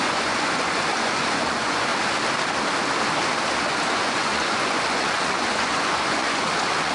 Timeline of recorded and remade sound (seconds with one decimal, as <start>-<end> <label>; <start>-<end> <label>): 0.0-1.9 remade; 1.9-3.9 recorded; 3.9-6.9 remade